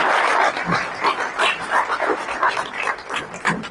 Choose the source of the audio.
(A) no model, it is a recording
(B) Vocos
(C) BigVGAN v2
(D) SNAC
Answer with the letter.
A